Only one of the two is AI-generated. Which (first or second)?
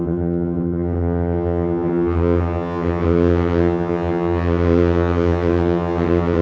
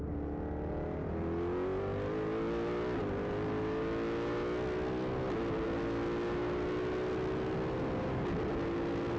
first